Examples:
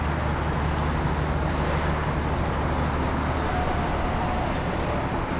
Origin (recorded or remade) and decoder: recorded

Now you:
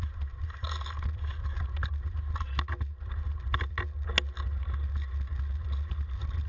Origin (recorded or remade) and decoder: recorded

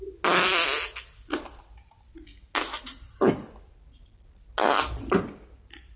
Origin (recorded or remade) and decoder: recorded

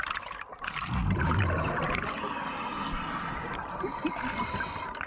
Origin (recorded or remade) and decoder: recorded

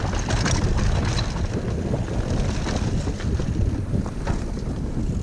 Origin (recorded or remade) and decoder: recorded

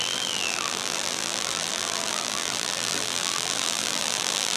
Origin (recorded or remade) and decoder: remade, vocoder, BigVGAN v2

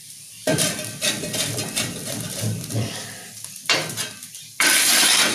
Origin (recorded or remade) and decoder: remade, vocoder, BigVGAN v2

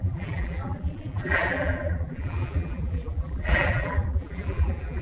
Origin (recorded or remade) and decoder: remade, vocoder, BigVGAN v2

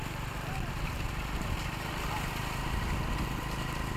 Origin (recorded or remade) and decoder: recorded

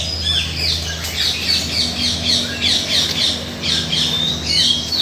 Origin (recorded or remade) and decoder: recorded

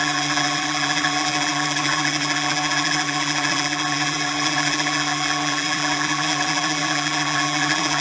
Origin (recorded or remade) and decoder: remade, vocoder, BigVGAN v2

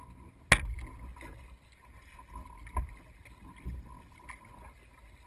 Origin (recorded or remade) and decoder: recorded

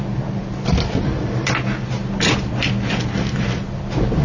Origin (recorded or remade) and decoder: recorded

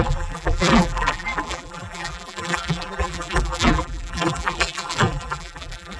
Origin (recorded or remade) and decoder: remade, vocoder, BigVGAN v2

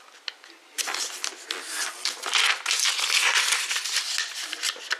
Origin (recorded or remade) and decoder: recorded